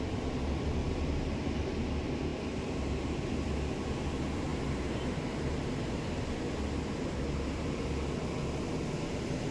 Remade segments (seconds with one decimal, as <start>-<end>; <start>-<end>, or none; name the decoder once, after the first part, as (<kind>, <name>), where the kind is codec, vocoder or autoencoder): 2.3-3.3 (vocoder, BigVGAN v2); 4.5-6.2